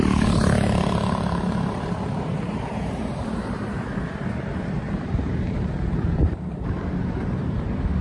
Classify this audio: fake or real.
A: fake